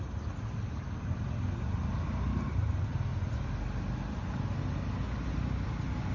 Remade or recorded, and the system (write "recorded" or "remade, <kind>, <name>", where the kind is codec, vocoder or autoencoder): recorded